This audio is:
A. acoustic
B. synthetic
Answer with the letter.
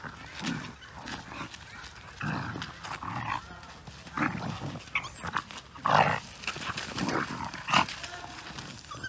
A